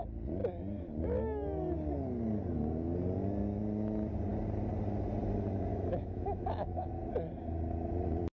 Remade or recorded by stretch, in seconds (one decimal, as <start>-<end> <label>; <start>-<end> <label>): 0.0-5.7 recorded; 5.7-6.9 remade; 6.9-8.3 recorded